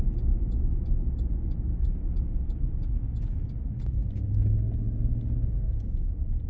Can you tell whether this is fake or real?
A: real